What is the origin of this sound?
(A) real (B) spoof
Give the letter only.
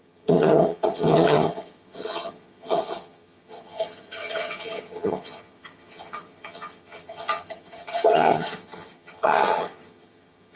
B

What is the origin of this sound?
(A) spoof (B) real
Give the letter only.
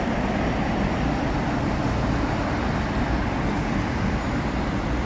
B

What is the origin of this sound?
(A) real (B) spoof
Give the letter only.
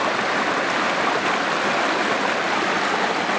A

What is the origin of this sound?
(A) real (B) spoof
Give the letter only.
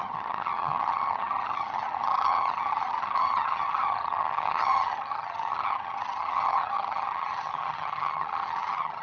B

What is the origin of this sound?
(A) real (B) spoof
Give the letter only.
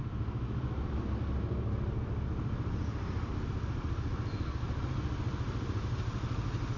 A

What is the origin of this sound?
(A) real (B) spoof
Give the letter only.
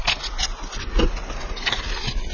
A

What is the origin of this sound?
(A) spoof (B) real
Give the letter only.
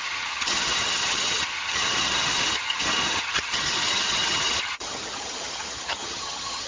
A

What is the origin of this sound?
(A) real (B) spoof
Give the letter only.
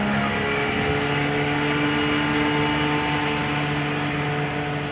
A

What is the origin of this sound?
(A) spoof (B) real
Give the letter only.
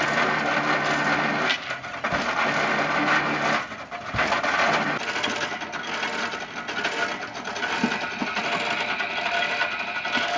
B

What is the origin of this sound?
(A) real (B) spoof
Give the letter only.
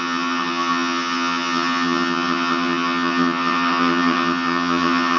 B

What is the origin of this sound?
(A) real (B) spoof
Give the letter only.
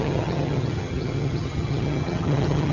B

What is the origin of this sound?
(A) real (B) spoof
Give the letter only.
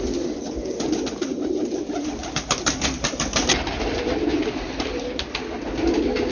A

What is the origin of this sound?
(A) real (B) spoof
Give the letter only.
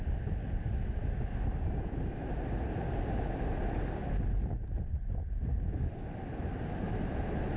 A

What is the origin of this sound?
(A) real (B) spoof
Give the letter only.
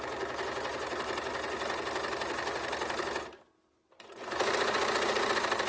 A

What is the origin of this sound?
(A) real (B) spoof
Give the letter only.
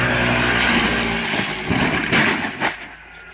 A